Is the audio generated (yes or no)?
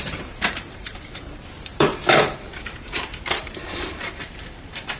yes